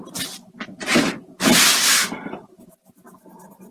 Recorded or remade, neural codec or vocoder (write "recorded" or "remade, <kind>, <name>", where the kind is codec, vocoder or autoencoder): recorded